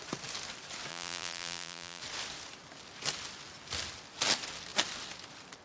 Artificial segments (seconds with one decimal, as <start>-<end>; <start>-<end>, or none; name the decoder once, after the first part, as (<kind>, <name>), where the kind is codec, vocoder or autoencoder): 0.9-2.0 (vocoder, BigVGAN v2)